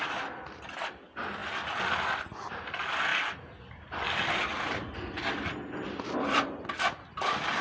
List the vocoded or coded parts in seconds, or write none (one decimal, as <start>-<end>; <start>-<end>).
none